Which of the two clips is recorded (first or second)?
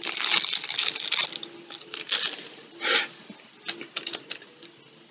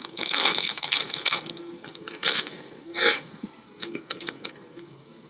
first